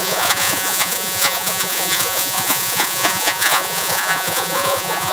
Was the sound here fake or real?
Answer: fake